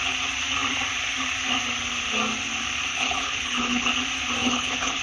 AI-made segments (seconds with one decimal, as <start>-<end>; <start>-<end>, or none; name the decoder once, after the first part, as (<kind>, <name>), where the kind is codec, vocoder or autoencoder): 2.9-3.9 (codec, HILCodec); 4.4-5.0